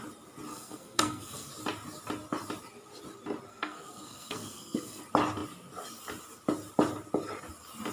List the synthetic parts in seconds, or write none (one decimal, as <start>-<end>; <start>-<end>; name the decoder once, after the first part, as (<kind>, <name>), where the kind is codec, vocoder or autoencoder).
0.5-1.5 (codec, SNAC); 3.5-5.0